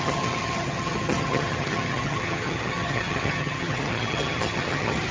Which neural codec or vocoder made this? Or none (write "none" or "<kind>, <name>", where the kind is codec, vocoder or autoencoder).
vocoder, HiFi-GAN